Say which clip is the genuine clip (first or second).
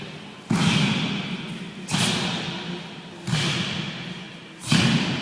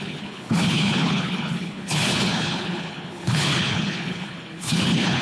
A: first